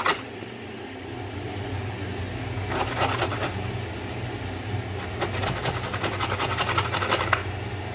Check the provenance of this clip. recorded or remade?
recorded